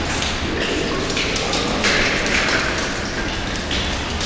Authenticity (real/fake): real